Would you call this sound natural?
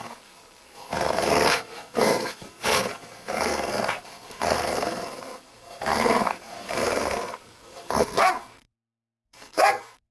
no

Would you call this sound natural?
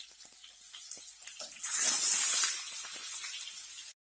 yes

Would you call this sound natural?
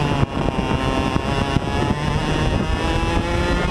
yes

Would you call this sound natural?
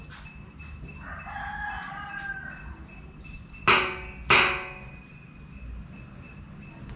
yes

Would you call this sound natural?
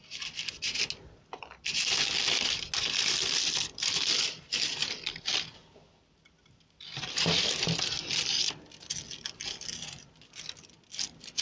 yes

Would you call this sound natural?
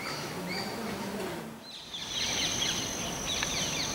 yes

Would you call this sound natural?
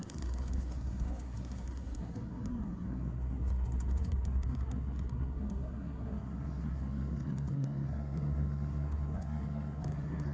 no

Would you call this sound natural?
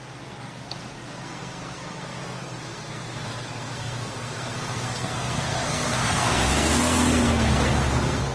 no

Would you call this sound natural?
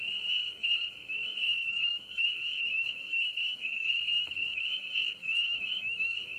no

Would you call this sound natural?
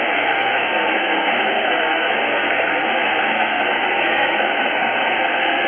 no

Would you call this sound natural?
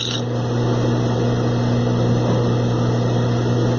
yes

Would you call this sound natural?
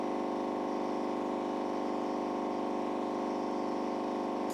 yes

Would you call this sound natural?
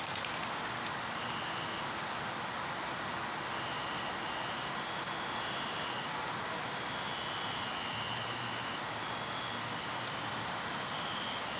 yes